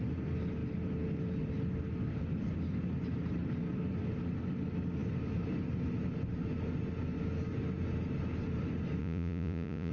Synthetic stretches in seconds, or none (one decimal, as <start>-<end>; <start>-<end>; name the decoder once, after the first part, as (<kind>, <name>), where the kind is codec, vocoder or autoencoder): 9.0-9.9 (vocoder, Vocos)

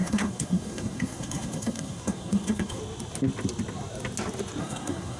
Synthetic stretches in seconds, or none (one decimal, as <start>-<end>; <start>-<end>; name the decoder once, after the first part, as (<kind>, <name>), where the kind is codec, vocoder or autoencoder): 0.0-2.8 (codec, SNAC); 4.6-5.2

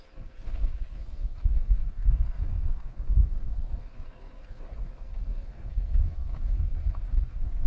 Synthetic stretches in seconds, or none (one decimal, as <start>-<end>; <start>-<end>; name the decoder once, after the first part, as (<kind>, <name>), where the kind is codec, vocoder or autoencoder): 0.0-7.7 (codec, SNAC)

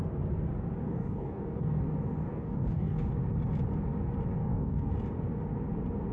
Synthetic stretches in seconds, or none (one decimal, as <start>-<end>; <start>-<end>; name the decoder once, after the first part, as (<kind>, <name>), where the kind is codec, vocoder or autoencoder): 0.8-1.8 (codec, DAC); 2.3-3.1; 4.4-4.9

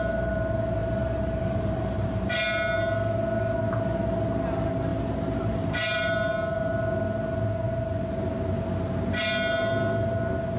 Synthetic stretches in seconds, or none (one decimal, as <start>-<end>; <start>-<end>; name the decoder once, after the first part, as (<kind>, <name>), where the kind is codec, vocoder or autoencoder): 0.8-2.3 (vocoder, BigVGAN v2); 4.9-6.1

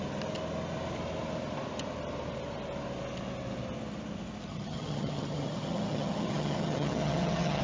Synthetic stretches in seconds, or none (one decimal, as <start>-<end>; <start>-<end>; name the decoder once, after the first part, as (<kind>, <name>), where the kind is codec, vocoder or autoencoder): 4.5-7.6 (vocoder, HiFi-GAN)